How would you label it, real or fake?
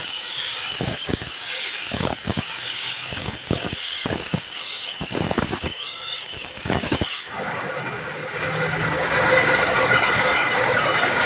fake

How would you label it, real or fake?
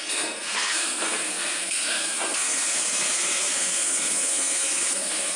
fake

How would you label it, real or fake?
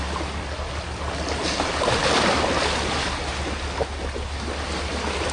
real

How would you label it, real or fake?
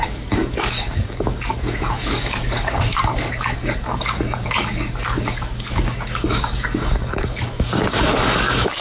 fake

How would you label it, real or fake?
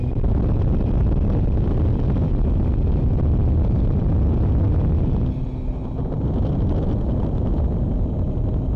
real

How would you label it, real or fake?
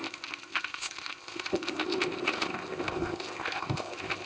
fake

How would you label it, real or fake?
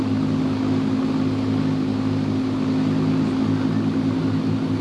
real